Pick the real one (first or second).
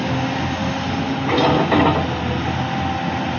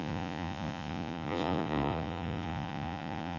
first